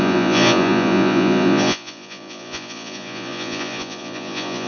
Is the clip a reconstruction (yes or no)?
yes